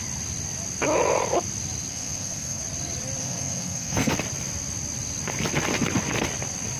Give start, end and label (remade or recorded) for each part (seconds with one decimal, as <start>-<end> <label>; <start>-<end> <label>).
0.0-1.9 recorded; 1.9-2.6 remade; 2.6-3.2 recorded; 3.2-4.1 remade; 4.1-6.8 recorded